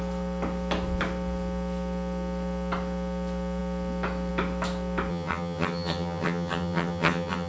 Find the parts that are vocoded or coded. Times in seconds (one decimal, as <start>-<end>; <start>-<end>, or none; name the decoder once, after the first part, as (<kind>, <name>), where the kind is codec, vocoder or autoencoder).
5.1-7.5 (vocoder, HiFi-GAN)